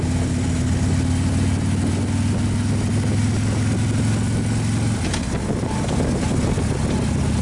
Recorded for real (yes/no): yes